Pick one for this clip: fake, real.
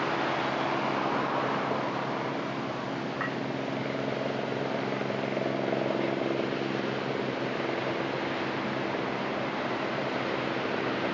real